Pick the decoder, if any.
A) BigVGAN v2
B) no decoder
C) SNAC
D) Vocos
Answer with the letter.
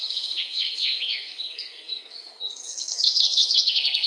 C